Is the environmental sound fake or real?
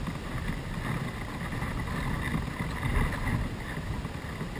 real